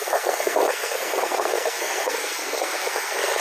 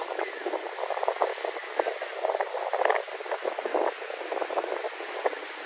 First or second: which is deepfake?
first